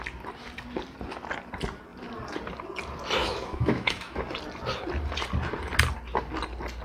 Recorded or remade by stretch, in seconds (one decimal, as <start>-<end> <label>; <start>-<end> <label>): 0.0-3.2 recorded; 3.2-4.2 remade; 4.2-6.8 recorded